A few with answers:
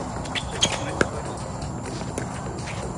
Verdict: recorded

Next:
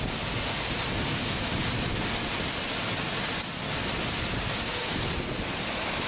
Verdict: recorded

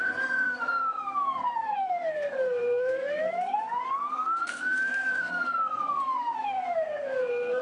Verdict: remade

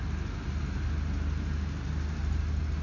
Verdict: recorded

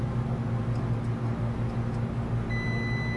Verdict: recorded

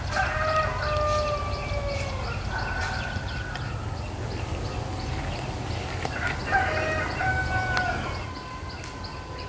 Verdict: recorded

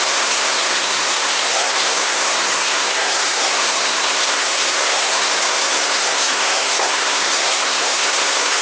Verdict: remade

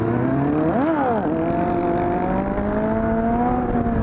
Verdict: recorded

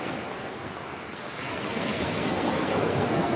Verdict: remade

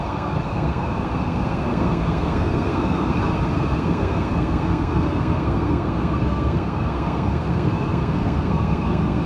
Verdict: remade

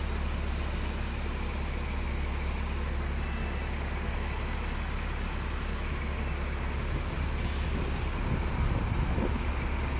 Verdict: recorded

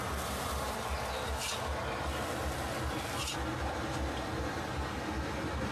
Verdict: recorded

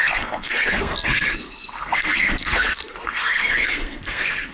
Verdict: remade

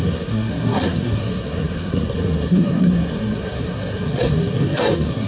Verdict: remade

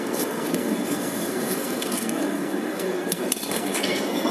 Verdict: remade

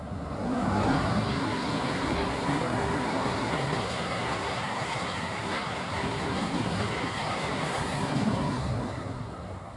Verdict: remade